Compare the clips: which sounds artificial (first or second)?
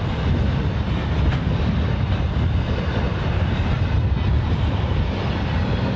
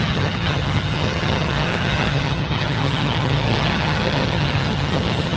second